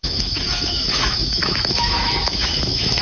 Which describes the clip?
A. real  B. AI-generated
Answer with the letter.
B